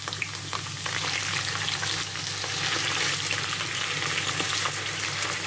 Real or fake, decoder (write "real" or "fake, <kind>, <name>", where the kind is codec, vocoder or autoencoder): real